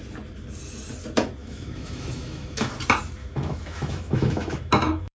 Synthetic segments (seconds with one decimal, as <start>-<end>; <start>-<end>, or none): 1.4-2.7; 3.2-5.2